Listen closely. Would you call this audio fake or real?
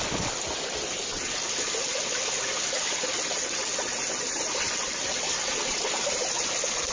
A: real